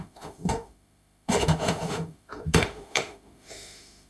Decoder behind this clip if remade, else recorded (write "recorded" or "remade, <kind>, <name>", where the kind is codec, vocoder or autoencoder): remade, autoencoder, DAC-VAE